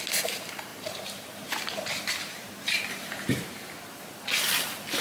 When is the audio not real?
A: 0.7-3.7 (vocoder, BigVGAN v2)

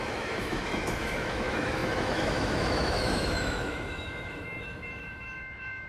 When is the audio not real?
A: 0.0-5.9 (autoencoder, DAC-VAE)

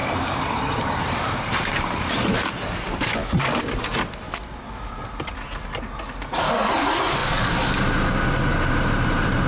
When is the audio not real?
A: 0.0-2.1 (vocoder, BigVGAN v2); 8.5-9.5